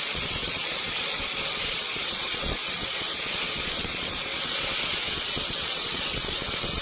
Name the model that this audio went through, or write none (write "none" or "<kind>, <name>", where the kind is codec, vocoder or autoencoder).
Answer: vocoder, Vocos